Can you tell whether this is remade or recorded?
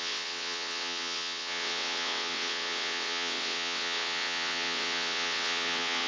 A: remade